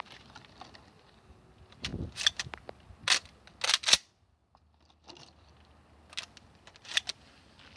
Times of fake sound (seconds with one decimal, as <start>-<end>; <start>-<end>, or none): none